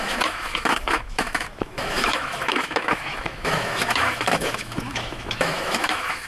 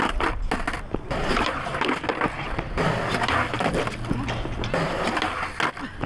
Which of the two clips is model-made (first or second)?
first